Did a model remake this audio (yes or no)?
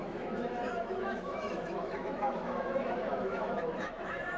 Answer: yes